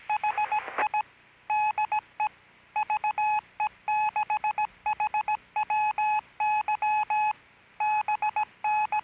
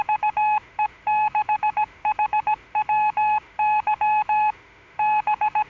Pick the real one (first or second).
first